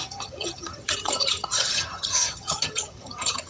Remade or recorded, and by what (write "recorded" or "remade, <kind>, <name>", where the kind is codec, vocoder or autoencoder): remade, vocoder, HiFi-GAN